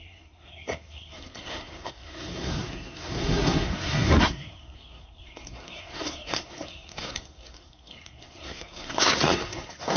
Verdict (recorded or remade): remade